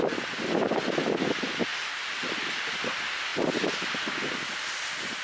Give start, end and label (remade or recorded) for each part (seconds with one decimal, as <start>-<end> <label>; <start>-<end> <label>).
0.0-5.2 recorded